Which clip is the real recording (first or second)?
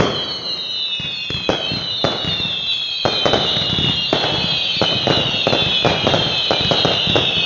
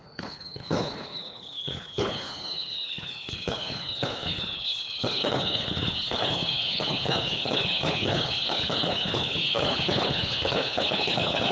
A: first